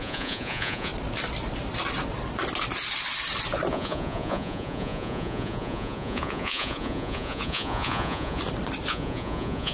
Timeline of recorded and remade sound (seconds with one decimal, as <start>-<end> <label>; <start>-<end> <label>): 0.0-0.9 remade; 0.9-3.7 recorded; 3.7-8.4 remade; 8.4-8.9 recorded; 8.9-9.7 remade